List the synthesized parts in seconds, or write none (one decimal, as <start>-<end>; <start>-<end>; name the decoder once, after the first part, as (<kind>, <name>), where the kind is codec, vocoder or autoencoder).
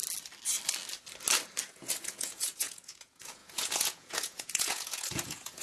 1.6-5.6 (vocoder, Vocos)